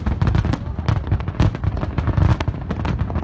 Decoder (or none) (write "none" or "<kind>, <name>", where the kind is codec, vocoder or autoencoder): none